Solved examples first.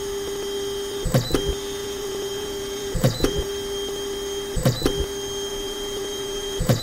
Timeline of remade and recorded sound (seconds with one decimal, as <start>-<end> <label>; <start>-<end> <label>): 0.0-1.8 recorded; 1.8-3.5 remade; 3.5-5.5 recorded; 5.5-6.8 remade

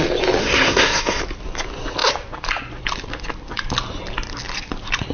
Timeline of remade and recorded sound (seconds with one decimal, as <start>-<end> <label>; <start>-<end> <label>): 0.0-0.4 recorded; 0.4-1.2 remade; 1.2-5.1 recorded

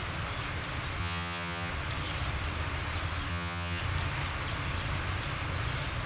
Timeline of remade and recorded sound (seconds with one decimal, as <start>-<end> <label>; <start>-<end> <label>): 0.0-1.0 recorded; 1.0-1.7 remade; 1.7-3.3 recorded; 3.3-3.8 remade; 3.8-6.1 recorded

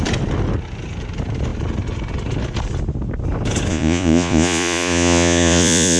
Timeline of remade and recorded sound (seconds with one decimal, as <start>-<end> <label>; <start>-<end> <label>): 0.0-3.7 recorded; 3.7-6.0 remade

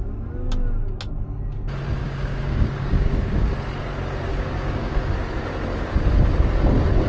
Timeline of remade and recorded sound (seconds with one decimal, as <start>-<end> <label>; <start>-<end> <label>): 0.0-2.0 recorded; 2.0-3.5 remade; 3.5-4.3 recorded; 4.3-5.1 remade; 5.1-7.1 recorded